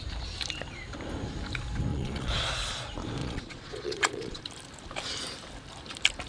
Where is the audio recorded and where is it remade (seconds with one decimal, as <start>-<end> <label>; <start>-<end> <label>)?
0.0-1.9 recorded; 1.9-2.5 remade; 2.5-3.2 recorded; 3.2-4.4 remade; 4.4-6.3 recorded

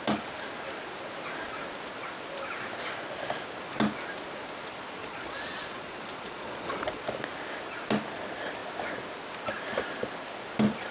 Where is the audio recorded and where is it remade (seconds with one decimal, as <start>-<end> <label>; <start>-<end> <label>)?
0.0-5.0 recorded; 5.0-7.0 remade; 7.0-10.9 recorded

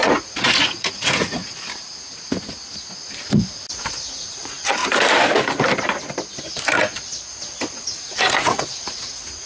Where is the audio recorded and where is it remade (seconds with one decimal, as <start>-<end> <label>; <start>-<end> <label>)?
0.0-1.4 remade; 1.4-3.7 recorded; 3.7-4.8 remade; 4.8-7.8 recorded; 7.8-9.5 remade

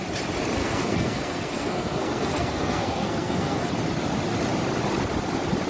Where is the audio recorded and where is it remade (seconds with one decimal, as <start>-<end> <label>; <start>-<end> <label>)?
0.0-0.6 recorded; 0.6-3.7 remade; 3.7-5.7 recorded

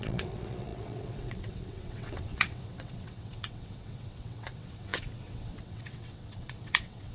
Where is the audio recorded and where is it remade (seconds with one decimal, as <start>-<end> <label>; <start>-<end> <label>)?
0.0-7.1 remade

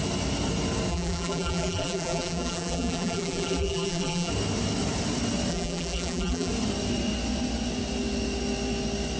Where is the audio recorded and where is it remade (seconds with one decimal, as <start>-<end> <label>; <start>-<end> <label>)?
0.0-0.9 recorded; 0.9-4.3 remade; 4.3-5.5 recorded; 5.5-6.5 remade; 6.5-9.2 recorded

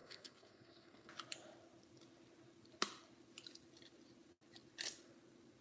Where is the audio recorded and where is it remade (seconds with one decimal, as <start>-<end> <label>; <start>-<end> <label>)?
0.0-1.1 remade; 1.1-5.6 recorded